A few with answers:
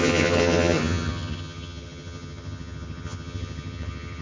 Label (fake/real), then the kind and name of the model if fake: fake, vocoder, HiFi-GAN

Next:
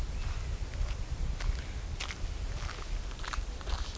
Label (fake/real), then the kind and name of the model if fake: real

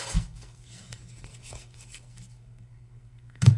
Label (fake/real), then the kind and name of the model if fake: fake, codec, SNAC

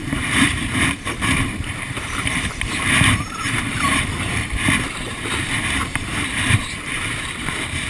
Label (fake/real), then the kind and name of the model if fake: fake, vocoder, BigVGAN v2